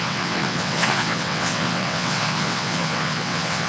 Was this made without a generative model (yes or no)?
no